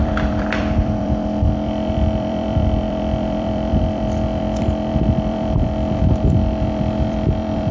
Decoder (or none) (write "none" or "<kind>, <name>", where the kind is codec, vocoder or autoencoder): vocoder, BigVGAN v2